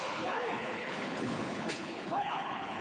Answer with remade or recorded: remade